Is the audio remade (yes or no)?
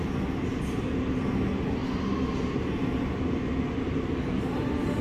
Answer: no